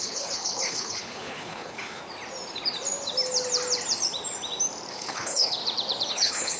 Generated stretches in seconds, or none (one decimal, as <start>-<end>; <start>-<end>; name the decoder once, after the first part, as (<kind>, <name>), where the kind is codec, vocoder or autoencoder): 0.0-2.0 (codec, HILCodec); 4.9-5.6; 6.1-6.6